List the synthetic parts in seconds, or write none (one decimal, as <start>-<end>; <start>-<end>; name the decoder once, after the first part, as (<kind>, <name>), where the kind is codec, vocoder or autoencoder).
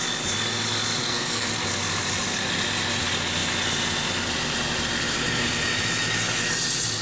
1.0-1.5 (codec, SNAC)